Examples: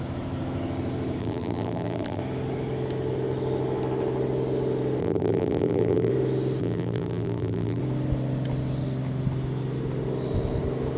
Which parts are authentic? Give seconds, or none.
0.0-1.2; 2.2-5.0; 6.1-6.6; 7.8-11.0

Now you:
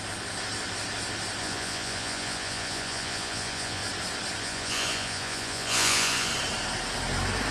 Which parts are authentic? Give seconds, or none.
0.0-1.4; 3.8-4.4; 6.3-7.5